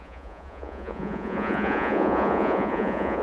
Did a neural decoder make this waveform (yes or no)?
yes